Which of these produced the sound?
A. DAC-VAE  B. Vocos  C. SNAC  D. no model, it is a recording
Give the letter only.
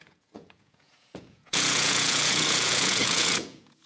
B